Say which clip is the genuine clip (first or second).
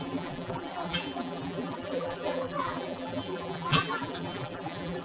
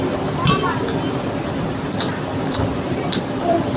second